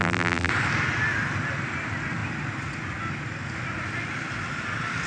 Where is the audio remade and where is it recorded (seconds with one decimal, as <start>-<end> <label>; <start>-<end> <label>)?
0.0-0.5 remade; 0.5-5.1 recorded